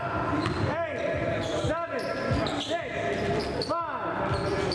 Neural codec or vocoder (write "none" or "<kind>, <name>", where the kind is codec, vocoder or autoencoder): none